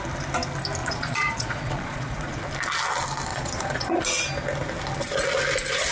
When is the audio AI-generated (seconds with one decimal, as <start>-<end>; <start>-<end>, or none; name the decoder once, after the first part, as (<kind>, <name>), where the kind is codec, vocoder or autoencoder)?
0.8-2.4 (vocoder, Vocos); 3.3-4.0